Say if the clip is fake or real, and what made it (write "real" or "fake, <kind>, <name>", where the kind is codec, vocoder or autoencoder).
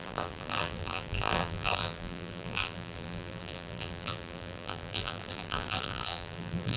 fake, vocoder, BigVGAN v2